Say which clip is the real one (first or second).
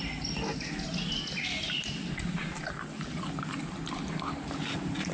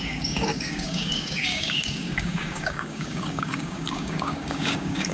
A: first